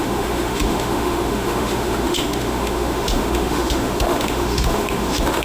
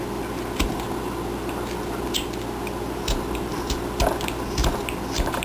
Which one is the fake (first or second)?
first